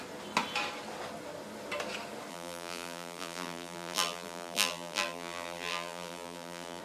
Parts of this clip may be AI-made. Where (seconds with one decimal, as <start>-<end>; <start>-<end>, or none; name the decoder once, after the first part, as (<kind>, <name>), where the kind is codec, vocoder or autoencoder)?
2.3-6.8 (vocoder, BigVGAN v2)